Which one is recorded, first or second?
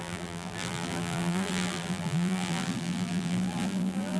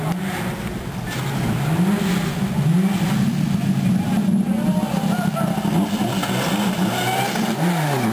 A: second